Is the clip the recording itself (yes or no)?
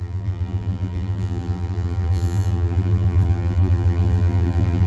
no